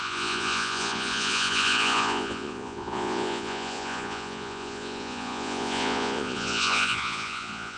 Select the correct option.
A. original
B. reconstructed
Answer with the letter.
B